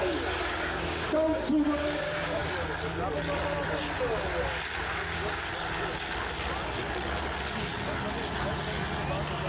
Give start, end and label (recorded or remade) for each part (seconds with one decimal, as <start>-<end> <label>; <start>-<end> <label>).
0.0-2.4 remade; 2.4-4.8 recorded; 4.8-5.5 remade; 5.5-9.5 recorded